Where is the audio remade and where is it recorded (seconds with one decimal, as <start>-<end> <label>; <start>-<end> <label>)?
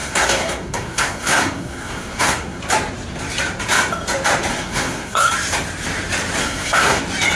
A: 0.0-2.6 remade; 2.6-4.5 recorded; 4.5-5.3 remade; 5.3-6.4 recorded; 6.4-7.0 remade; 7.0-7.4 recorded